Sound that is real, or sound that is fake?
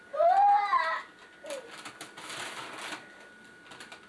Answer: real